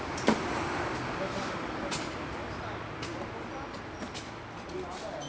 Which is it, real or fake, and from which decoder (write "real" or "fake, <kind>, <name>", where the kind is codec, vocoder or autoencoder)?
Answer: real